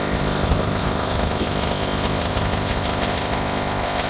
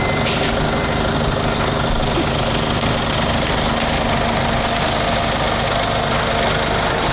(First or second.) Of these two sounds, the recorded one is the second